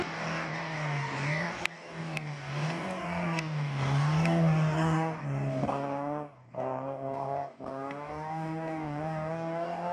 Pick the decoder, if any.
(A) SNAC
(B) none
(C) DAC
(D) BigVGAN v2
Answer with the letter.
C